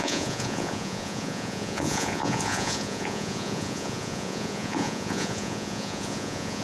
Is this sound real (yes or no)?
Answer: no